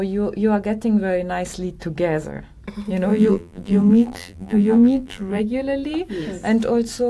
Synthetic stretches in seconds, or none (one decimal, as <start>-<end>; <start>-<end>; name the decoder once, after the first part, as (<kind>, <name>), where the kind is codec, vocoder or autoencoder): 3.1-5.4 (vocoder, BigVGAN v2)